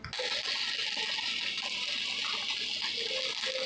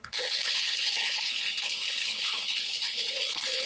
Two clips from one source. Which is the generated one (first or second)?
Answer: second